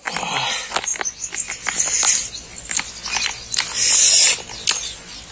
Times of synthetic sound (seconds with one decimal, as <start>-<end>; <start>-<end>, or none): none